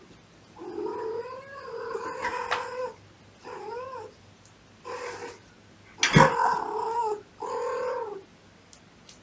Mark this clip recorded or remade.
recorded